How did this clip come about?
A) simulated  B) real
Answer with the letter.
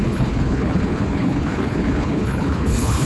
A